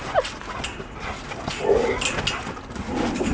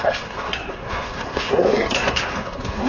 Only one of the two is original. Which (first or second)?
first